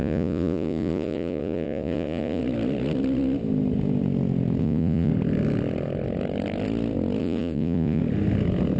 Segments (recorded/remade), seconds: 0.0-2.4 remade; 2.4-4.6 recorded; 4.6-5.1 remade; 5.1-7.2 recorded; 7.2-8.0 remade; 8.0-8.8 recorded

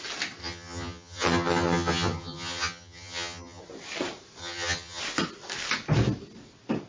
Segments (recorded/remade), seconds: 0.0-0.4 recorded; 0.4-3.6 remade; 3.6-4.4 recorded; 4.4-5.0 remade; 5.0-6.9 recorded

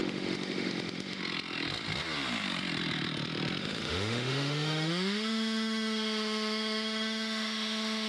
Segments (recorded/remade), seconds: 0.0-1.2 remade; 1.2-3.6 recorded; 3.6-8.1 remade

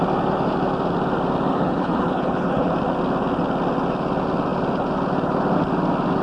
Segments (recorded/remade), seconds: 0.0-1.5 recorded; 1.5-2.7 remade; 2.7-6.2 recorded

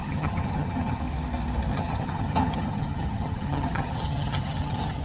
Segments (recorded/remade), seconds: 0.0-1.0 remade; 1.0-1.7 recorded; 1.7-5.0 remade

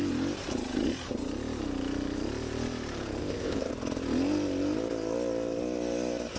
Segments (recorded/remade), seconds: 0.0-3.2 recorded; 3.2-3.7 remade; 3.7-6.4 recorded

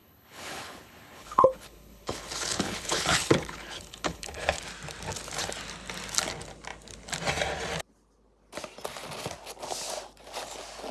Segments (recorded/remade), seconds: 0.0-4.6 remade; 4.6-10.9 recorded

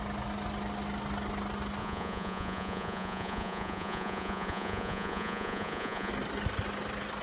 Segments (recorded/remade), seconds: 0.0-1.8 recorded; 1.8-6.1 remade; 6.1-7.2 recorded